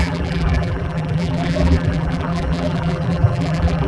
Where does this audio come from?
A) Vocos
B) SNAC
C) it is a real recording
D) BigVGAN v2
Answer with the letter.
D